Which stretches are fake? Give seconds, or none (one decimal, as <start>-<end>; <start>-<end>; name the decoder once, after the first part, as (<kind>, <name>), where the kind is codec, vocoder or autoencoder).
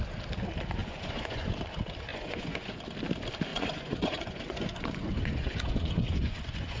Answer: 0.8-1.5 (vocoder, Vocos); 2.1-2.7; 3.5-6.8